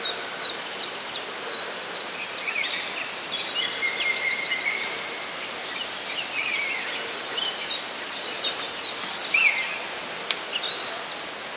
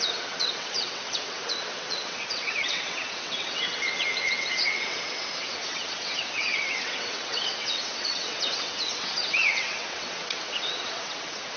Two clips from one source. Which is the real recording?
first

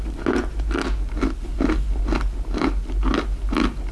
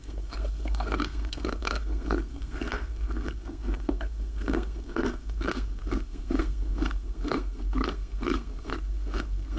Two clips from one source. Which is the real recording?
first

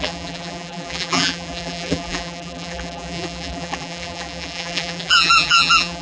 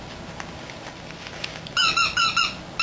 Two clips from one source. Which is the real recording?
second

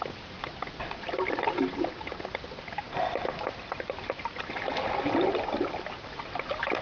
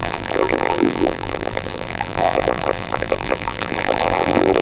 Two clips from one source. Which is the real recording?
first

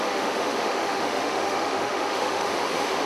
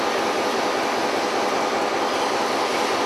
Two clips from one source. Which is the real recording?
second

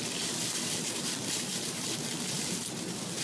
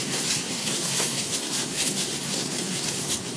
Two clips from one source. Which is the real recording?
first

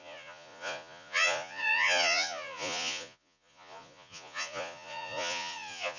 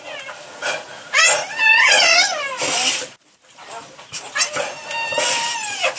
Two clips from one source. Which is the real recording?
second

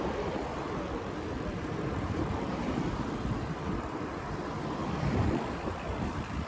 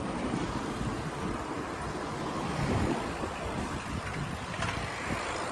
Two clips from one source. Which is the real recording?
second